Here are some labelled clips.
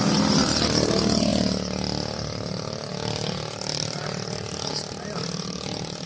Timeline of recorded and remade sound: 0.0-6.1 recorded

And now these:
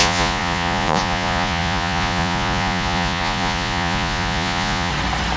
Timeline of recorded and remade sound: 0.0-4.9 remade; 4.9-5.4 recorded